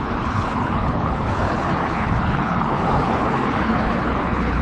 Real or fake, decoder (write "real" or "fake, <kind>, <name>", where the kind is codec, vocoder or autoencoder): fake, codec, HILCodec